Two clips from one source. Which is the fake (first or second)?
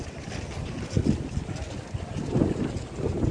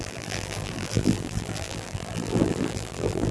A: second